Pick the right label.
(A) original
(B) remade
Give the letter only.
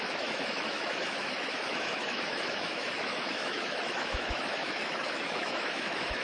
B